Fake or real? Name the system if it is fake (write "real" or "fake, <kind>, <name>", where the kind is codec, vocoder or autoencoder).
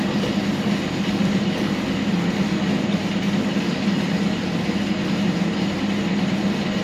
real